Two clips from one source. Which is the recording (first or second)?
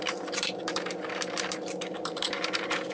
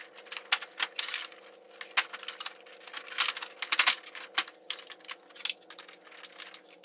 second